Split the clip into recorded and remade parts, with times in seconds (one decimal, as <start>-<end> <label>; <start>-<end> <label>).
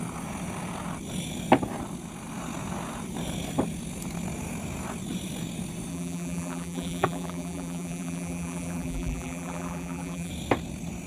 0.0-5.9 recorded; 5.9-10.3 remade; 10.3-11.1 recorded